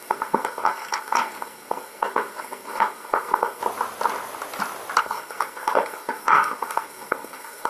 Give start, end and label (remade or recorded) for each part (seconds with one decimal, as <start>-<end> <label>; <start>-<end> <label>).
0.0-3.6 remade; 3.6-5.0 recorded; 5.0-7.7 remade